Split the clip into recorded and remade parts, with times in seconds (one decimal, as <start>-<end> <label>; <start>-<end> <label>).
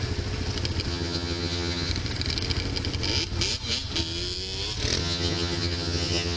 0.0-0.9 recorded; 0.9-1.9 remade; 1.9-5.0 recorded; 5.0-6.4 remade